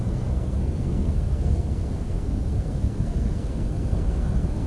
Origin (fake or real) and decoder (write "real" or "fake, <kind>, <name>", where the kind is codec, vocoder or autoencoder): fake, codec, SNAC